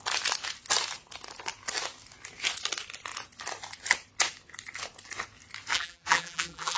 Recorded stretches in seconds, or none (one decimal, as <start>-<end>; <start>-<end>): 0.0-5.7